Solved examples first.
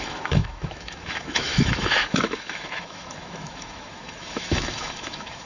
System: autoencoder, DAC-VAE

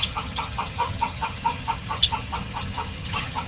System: vocoder, HiFi-GAN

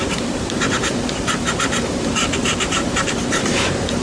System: vocoder, BigVGAN v2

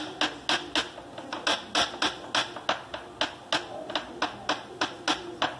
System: none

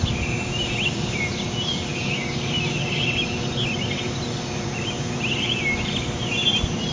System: none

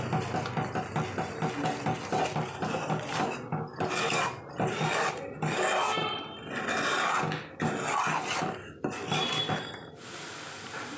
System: none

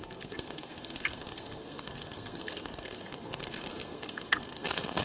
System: codec, SNAC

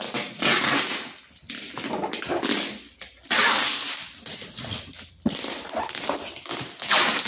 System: none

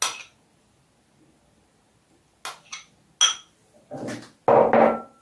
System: none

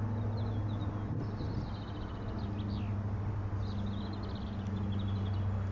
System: none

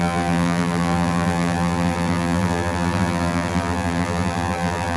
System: vocoder, BigVGAN v2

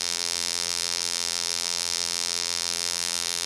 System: vocoder, BigVGAN v2